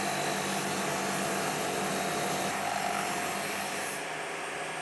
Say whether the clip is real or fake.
real